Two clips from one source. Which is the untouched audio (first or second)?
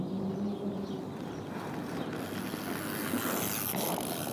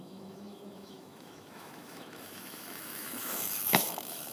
first